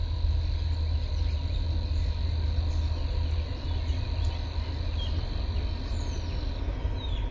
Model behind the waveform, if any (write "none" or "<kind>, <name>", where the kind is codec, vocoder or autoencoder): none